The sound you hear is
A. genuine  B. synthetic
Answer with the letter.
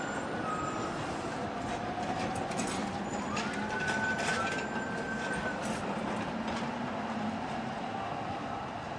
A